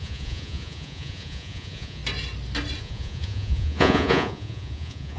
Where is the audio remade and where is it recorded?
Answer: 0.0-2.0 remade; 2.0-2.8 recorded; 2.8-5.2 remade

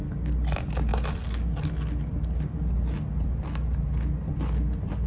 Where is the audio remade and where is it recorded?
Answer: 0.0-5.1 recorded